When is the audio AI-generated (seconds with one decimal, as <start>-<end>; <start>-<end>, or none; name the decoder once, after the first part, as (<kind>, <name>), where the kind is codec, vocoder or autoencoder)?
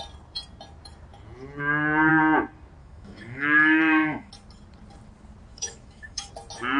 2.8-4.3 (autoencoder, DAC-VAE); 5.5-6.3